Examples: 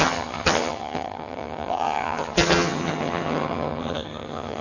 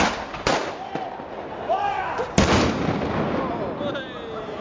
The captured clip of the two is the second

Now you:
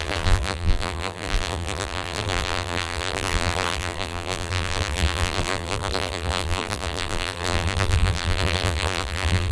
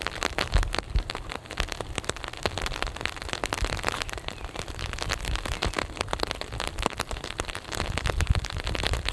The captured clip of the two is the second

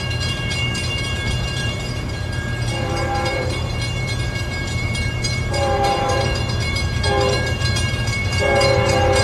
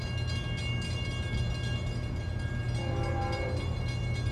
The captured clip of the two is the second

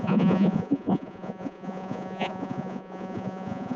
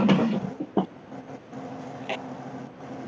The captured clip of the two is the second